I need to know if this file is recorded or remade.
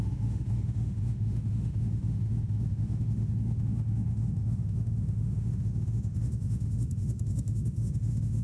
remade